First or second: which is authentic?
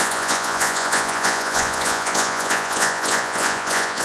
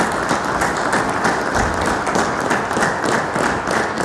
second